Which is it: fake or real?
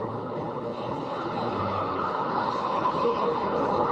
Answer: fake